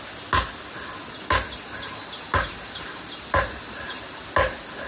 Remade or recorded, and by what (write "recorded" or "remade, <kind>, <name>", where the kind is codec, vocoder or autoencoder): recorded